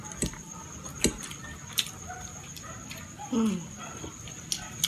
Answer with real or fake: real